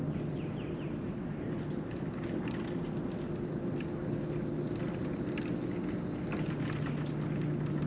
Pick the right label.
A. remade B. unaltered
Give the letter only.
B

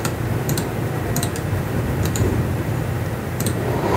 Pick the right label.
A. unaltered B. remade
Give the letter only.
B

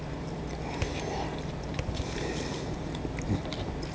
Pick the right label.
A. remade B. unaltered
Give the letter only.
B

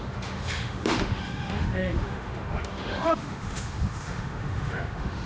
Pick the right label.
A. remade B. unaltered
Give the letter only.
A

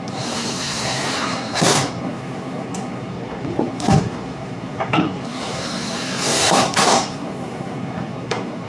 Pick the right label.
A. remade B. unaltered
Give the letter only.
A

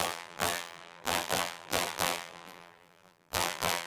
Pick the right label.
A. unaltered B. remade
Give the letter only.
B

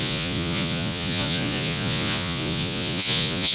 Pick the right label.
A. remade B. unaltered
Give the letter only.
A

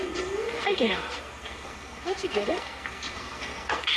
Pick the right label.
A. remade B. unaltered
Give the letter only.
A